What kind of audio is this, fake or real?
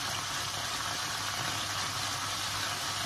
real